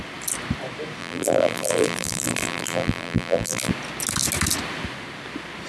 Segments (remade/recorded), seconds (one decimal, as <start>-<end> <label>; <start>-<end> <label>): 0.0-1.0 recorded; 1.0-3.7 remade; 3.7-5.7 recorded